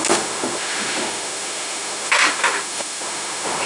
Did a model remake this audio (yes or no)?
yes